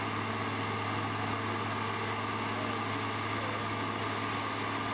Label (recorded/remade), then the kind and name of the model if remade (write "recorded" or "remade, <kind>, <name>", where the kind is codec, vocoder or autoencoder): recorded